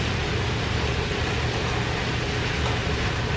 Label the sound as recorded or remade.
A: recorded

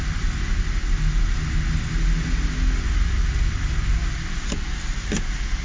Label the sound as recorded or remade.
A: recorded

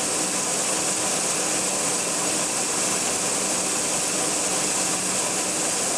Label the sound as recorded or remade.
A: recorded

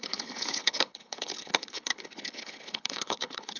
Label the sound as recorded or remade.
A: remade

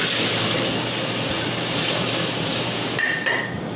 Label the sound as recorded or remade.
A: recorded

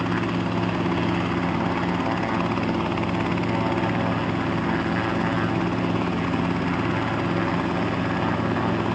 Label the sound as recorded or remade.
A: recorded